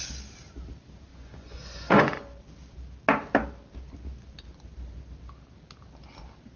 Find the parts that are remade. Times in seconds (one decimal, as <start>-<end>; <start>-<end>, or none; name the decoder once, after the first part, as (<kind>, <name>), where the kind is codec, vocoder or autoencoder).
1.1-2.4 (vocoder, Vocos)